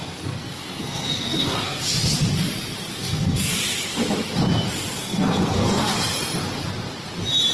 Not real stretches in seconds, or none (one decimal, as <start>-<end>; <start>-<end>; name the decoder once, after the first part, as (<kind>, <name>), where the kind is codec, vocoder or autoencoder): 0.0-1.8 (codec, SNAC); 3.0-3.5; 5.0-5.9